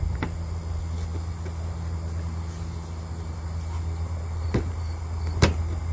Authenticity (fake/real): real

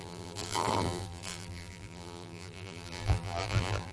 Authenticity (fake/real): fake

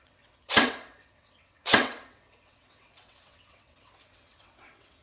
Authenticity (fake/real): fake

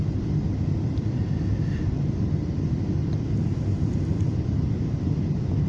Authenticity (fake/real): real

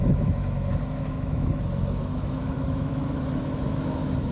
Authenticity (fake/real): fake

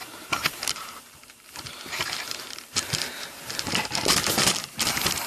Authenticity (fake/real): fake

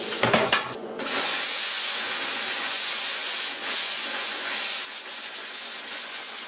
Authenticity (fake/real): fake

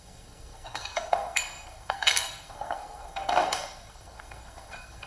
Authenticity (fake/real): fake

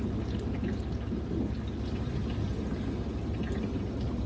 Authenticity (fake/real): real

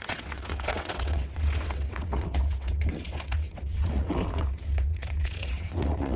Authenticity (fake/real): fake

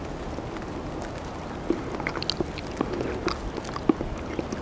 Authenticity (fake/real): real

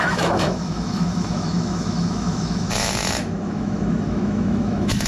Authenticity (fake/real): fake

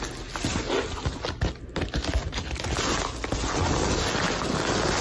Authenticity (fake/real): real